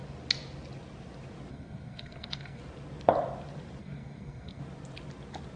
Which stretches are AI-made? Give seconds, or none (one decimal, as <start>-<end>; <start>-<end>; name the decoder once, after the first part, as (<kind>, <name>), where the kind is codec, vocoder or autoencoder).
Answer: 1.5-2.6 (codec, SNAC); 3.8-4.6